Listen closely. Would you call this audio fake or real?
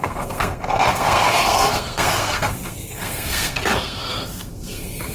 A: fake